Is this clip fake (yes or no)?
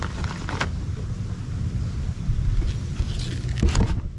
no